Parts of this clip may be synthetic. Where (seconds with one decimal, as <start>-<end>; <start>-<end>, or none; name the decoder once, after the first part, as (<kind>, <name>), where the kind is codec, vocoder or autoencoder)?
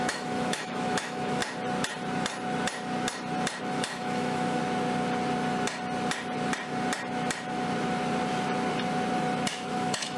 0.0-1.4 (autoencoder, DAC-VAE); 3.6-4.6; 9.5-10.2